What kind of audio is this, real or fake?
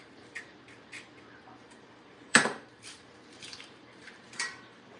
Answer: fake